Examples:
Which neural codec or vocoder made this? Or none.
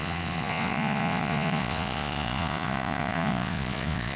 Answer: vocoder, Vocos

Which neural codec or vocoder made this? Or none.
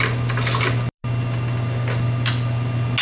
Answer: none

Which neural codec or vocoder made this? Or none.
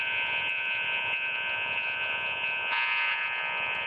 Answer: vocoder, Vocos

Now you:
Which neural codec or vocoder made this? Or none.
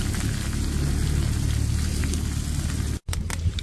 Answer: none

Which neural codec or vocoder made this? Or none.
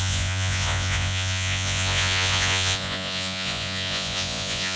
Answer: vocoder, Vocos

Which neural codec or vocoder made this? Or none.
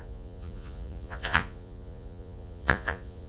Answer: vocoder, Vocos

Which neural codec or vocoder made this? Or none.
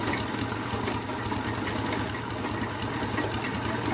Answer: none